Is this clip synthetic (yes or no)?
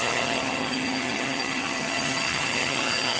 yes